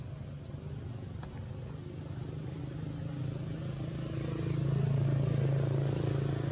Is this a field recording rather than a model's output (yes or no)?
yes